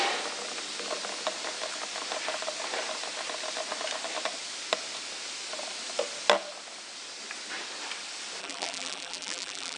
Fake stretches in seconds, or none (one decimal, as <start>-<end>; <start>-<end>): 8.4-9.8